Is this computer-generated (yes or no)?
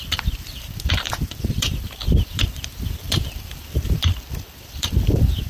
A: yes